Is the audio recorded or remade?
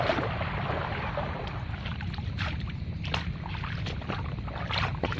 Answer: recorded